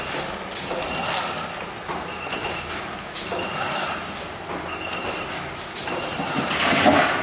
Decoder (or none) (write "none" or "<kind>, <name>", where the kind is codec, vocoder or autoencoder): none